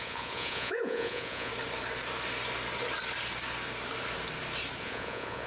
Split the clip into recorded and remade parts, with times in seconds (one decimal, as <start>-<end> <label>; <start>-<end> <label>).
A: 0.0-1.5 remade; 1.5-4.8 recorded; 4.8-5.5 remade